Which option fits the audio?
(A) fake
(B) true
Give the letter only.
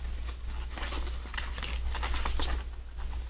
B